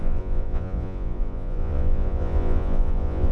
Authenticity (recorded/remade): remade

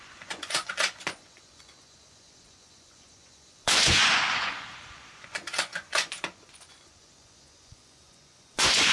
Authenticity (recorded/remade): remade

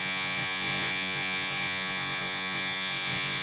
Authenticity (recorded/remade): remade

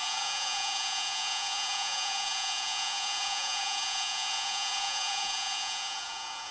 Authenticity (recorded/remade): remade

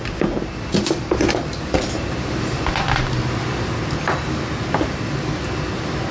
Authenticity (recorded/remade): recorded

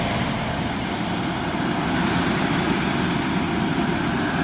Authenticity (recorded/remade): recorded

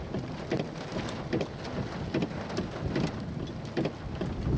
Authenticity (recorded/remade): recorded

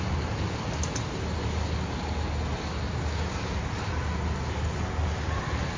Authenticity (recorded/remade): recorded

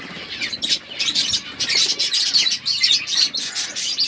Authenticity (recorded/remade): recorded